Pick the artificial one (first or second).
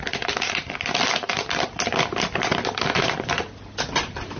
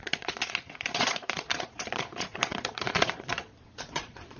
second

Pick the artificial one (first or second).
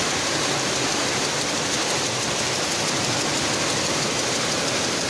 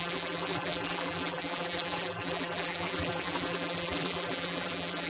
second